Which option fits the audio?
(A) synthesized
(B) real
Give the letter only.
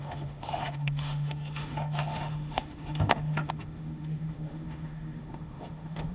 A